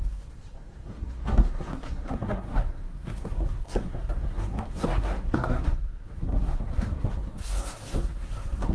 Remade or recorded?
remade